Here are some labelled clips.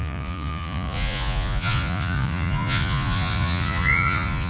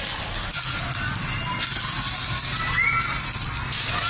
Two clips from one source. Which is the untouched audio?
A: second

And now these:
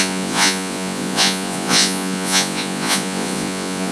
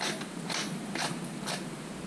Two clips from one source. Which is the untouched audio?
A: second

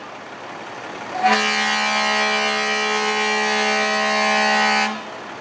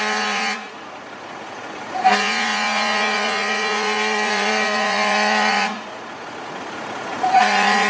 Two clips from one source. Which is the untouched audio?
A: first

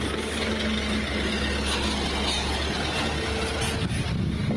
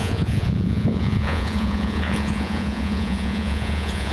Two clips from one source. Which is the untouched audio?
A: first